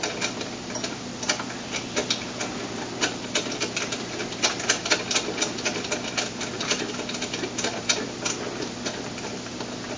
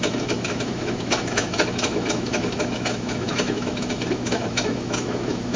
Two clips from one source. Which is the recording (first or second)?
first